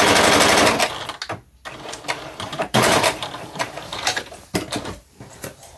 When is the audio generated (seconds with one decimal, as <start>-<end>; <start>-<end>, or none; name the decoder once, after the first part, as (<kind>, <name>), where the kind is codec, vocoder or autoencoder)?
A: 2.5-5.2 (vocoder, BigVGAN v2)